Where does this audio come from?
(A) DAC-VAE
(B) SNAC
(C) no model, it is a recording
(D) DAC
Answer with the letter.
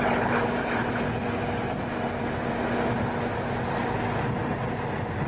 C